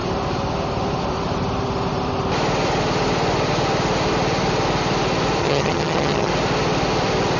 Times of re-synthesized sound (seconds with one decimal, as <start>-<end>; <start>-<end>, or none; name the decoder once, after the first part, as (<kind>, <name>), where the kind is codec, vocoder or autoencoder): 5.4-6.3 (vocoder, HiFi-GAN)